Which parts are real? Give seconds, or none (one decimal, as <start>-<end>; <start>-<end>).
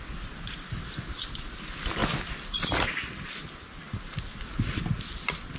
0.0-5.6